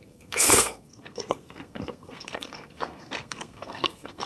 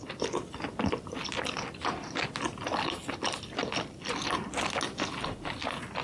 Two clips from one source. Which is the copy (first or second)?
first